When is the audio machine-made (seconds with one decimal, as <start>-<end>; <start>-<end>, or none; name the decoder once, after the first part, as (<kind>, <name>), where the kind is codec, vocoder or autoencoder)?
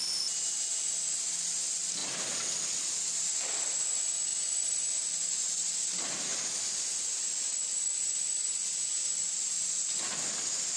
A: none